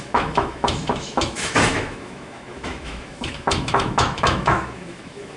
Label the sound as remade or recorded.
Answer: remade